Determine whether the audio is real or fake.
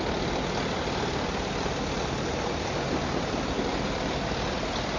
real